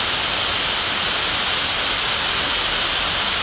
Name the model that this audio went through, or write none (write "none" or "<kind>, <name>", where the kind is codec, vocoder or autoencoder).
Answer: none